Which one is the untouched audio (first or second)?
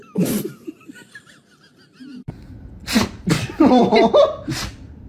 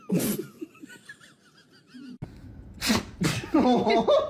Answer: second